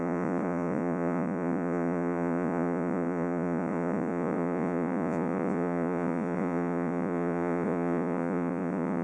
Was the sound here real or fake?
fake